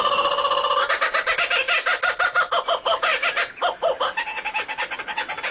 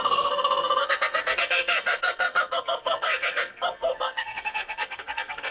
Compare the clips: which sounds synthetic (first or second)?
second